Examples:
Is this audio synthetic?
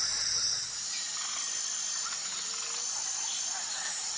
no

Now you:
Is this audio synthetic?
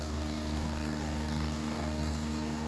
yes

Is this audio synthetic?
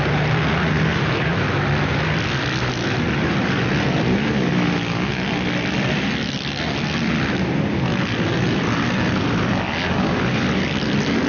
no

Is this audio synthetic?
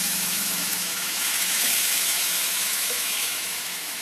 yes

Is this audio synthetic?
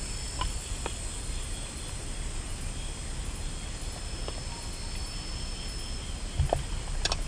no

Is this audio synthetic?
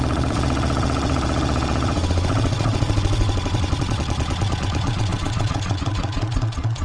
yes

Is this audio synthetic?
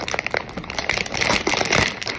yes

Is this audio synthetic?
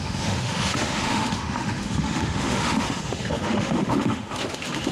yes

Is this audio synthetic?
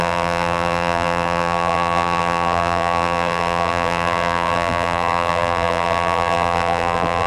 yes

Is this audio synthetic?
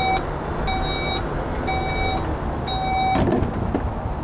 no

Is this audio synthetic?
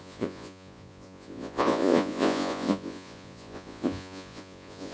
yes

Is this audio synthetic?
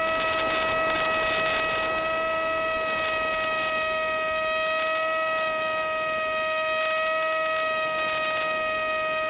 no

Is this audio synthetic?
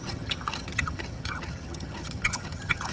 yes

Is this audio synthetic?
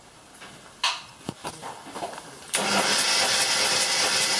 no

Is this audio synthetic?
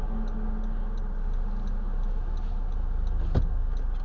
no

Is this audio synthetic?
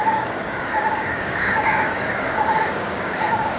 yes